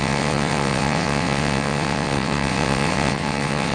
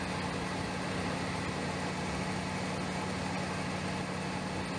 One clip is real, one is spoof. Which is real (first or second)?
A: second